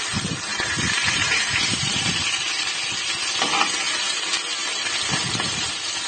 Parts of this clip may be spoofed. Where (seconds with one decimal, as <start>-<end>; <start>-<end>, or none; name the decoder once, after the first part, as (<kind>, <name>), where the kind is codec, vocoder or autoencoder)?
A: 0.5-2.0 (vocoder, BigVGAN v2)